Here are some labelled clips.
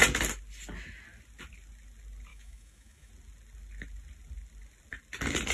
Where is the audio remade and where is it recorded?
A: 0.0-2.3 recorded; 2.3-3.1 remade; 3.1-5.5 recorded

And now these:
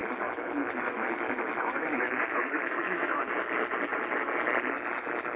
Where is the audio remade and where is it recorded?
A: 0.0-3.2 remade; 3.2-5.4 recorded

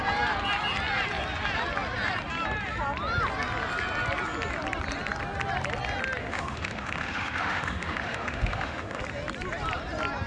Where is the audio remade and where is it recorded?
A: 0.0-6.2 recorded; 6.2-9.0 remade; 9.0-10.3 recorded

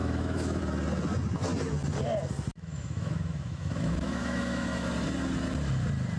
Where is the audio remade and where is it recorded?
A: 0.0-0.6 remade; 0.6-2.5 recorded; 2.5-4.9 remade; 4.9-6.2 recorded

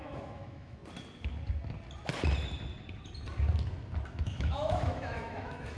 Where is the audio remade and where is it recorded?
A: 0.0-0.8 remade; 0.8-4.1 recorded; 4.1-5.8 remade